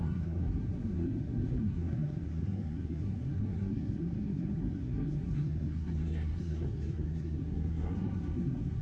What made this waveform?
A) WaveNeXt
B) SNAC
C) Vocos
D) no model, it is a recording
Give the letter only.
B